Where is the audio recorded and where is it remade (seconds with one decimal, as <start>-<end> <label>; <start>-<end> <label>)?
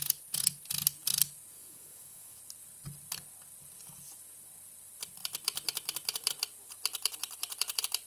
0.0-1.5 recorded; 1.5-2.4 remade; 2.4-8.1 recorded